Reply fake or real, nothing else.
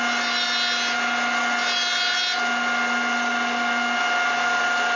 real